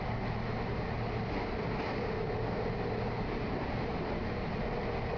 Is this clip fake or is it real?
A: real